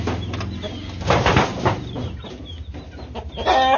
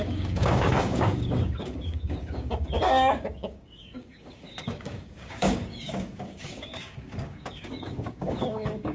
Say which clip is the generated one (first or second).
second